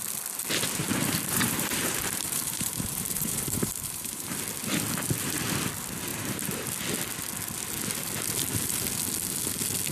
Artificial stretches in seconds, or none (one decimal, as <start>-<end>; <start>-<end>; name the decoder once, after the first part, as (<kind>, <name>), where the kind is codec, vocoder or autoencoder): 0.8-4.4 (vocoder, BigVGAN v2); 6.1-6.7

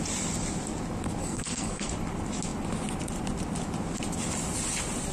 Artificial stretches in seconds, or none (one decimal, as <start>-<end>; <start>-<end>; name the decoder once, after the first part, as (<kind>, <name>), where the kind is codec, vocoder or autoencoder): 1.2-1.9 (codec, SNAC)

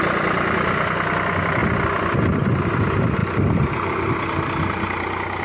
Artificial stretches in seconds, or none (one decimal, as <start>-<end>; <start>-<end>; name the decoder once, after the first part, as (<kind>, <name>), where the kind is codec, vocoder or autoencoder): 1.6-2.7 (vocoder, BigVGAN v2)